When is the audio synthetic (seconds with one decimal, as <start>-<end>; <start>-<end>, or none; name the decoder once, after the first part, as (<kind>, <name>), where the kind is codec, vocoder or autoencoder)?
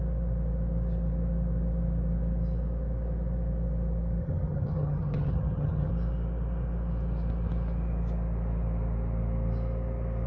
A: 4.2-5.9 (vocoder, HiFi-GAN)